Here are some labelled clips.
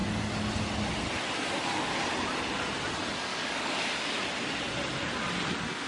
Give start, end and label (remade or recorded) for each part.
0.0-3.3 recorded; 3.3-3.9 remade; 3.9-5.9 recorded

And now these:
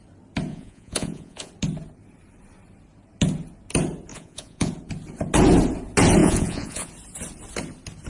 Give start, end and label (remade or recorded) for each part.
0.0-0.5 recorded; 0.5-1.5 remade; 1.5-4.1 recorded; 4.1-4.7 remade; 4.7-6.2 recorded; 6.2-6.9 remade; 6.9-8.1 recorded

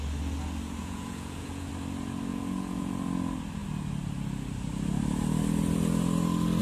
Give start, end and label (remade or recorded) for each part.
0.0-0.8 recorded; 0.8-1.7 remade; 1.7-2.3 recorded; 2.3-2.9 remade; 2.9-6.6 recorded